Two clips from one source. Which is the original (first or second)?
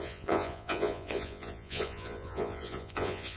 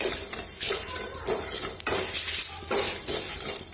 second